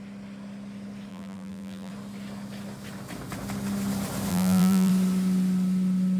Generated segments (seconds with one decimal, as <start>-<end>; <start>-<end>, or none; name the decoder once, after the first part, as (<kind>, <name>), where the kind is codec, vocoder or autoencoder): 1.1-1.9 (vocoder, BigVGAN v2); 4.3-4.9